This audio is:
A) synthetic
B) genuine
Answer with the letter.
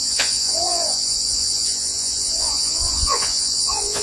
A